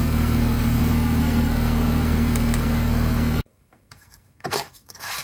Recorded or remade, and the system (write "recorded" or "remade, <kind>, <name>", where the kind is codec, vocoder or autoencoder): remade, codec, SNAC